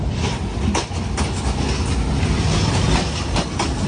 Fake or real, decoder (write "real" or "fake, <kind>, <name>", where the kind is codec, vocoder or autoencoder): real